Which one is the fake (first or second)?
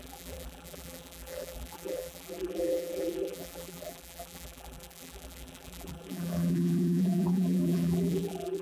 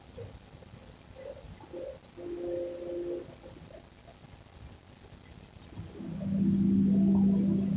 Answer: first